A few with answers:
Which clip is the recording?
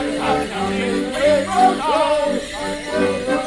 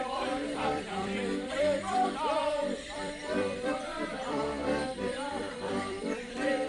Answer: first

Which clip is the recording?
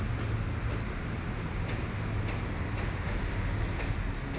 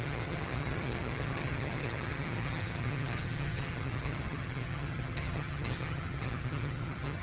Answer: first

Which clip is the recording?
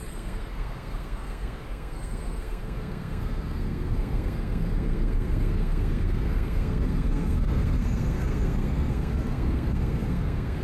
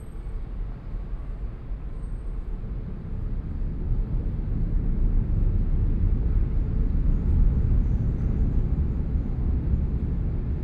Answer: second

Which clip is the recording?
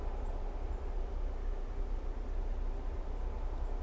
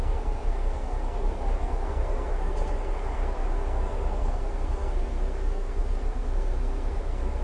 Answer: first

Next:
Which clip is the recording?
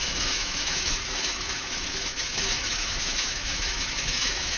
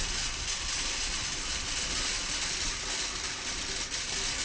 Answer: second